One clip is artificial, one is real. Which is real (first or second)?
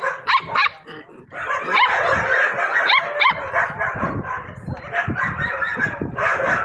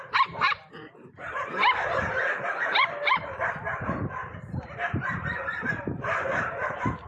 first